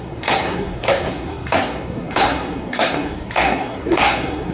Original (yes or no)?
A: no